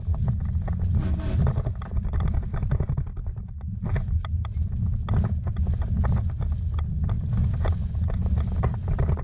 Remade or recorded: recorded